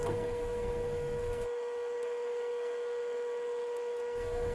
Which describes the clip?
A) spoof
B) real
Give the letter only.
A